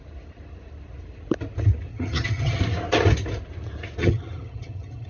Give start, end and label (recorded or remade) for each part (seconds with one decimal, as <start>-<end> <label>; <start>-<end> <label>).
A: 0.0-1.9 recorded; 1.9-2.6 remade; 2.6-4.0 recorded; 4.0-5.1 remade